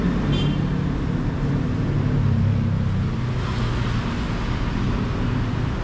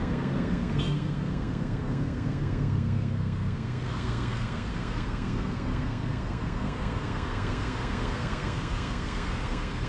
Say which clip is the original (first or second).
first